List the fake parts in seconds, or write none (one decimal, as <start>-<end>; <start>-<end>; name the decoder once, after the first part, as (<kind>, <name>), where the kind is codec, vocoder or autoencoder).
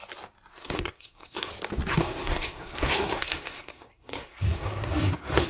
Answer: 0.5-1.5 (codec, SNAC); 1.9-5.5